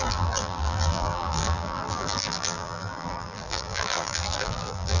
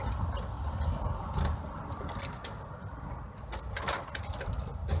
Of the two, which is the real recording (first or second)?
second